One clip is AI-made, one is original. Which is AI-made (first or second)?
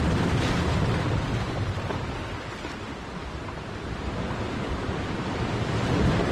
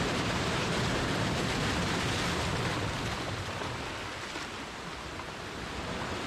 first